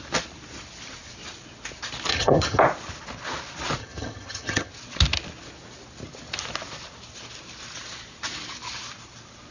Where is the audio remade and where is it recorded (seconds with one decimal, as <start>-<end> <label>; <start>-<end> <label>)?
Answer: 0.0-2.1 recorded; 2.1-2.6 remade; 2.6-3.8 recorded; 3.8-4.7 remade; 4.7-9.5 recorded